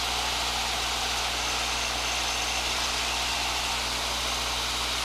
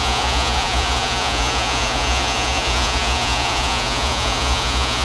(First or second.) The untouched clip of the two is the first